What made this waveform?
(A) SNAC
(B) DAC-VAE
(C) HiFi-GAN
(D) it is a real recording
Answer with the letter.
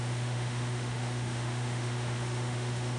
B